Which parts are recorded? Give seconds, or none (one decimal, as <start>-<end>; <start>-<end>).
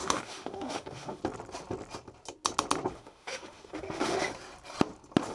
1.2-2.9; 4.3-5.3